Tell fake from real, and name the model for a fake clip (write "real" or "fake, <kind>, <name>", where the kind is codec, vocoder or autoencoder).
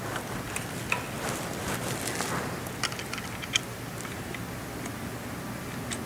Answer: real